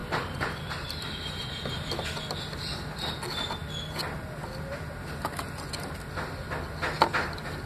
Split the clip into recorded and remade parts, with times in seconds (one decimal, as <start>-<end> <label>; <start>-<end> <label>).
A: 0.0-1.3 remade; 1.3-7.7 recorded